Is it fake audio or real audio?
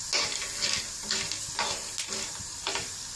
real